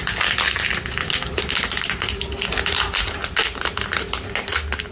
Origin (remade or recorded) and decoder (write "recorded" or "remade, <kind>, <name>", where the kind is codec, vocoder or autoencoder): recorded